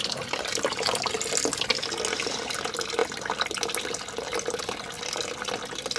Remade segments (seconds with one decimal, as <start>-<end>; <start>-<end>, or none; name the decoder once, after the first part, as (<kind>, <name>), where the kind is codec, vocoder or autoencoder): none